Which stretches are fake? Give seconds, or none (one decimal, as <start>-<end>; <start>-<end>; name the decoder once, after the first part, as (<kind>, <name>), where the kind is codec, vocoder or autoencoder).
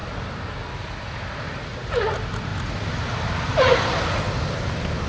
none